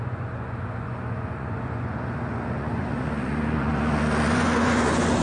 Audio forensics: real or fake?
fake